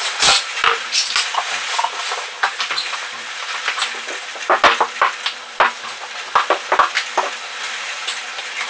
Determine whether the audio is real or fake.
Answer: real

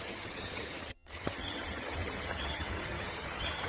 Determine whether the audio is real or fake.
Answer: fake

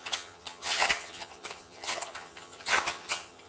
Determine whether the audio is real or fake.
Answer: fake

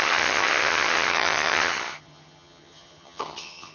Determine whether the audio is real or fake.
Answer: fake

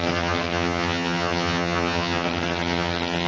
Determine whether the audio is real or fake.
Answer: fake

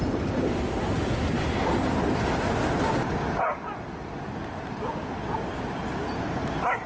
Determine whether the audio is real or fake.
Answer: real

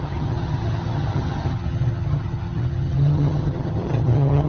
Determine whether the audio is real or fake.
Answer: fake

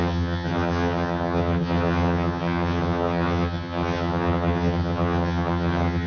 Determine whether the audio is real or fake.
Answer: fake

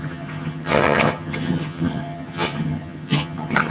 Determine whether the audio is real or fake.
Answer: fake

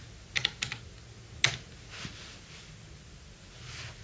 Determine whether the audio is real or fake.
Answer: real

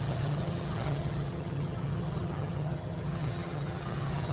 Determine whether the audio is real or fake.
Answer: fake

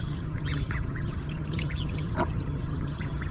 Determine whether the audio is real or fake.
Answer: fake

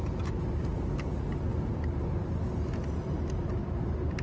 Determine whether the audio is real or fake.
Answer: real